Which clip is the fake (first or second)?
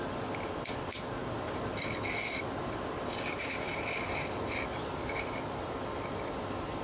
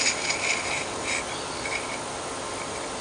first